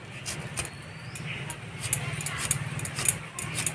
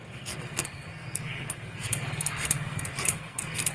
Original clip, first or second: first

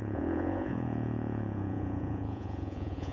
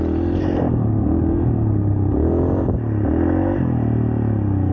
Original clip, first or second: second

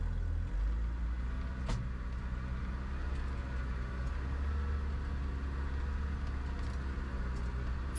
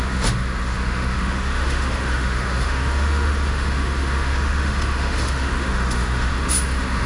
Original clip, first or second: first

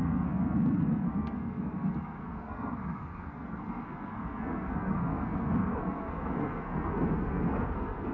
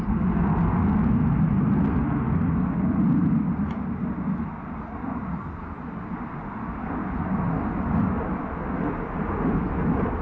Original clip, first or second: second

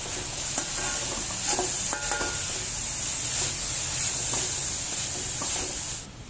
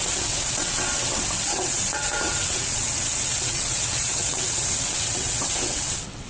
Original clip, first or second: first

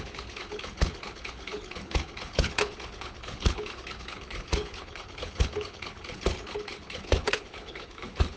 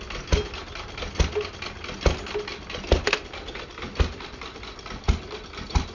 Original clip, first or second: second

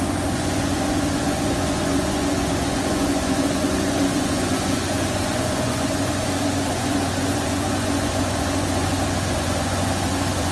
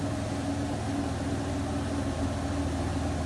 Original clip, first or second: second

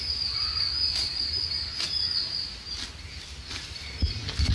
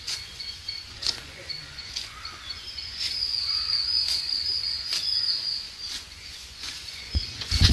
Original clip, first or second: first